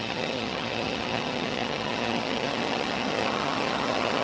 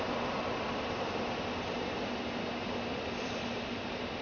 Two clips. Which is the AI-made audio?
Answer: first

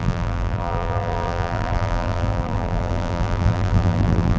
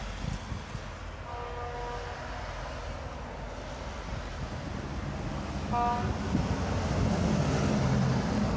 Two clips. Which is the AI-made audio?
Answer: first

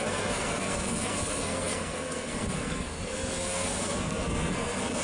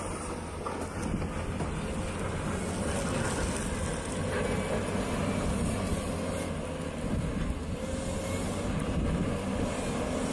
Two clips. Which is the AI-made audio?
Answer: first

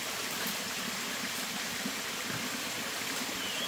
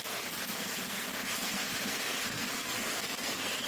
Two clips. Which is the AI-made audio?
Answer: second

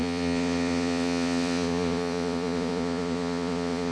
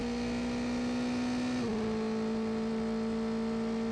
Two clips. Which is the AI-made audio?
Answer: first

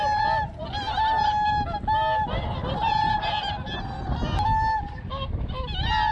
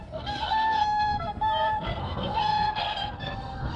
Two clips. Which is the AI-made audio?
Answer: second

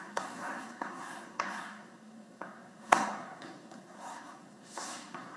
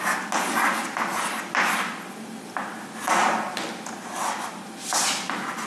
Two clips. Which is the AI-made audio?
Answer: first